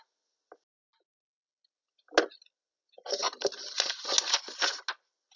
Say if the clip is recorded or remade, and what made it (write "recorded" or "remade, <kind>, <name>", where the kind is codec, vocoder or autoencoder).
recorded